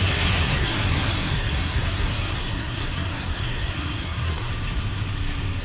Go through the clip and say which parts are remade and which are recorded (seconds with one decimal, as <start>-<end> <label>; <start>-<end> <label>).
0.0-4.5 remade; 4.5-5.6 recorded